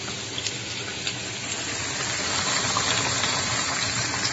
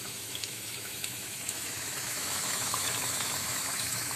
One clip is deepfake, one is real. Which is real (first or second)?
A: first